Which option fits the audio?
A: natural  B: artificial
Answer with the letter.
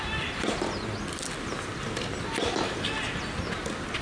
A